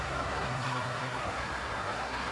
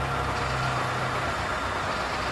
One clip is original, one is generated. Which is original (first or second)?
second